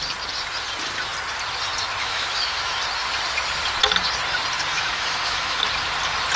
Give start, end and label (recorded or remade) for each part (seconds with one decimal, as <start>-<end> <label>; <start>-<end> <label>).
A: 0.0-2.0 recorded; 2.0-2.8 remade; 2.8-4.7 recorded; 4.7-5.6 remade; 5.6-6.4 recorded